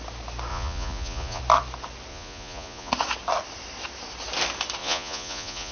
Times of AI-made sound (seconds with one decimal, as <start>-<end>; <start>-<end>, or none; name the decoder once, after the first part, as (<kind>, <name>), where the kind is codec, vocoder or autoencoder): 0.5-1.4 (vocoder, Vocos); 2.1-2.9; 4.8-5.7